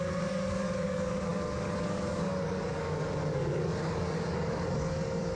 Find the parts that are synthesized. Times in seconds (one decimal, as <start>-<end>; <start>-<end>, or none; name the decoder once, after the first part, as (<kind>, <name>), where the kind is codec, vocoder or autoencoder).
0.0-5.4 (codec, DAC)